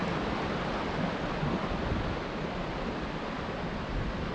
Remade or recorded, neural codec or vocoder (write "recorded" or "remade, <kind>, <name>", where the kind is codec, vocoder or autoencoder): recorded